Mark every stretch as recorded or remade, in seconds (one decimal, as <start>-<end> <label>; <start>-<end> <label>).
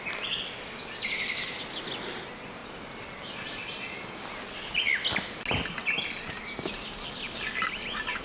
0.0-8.2 recorded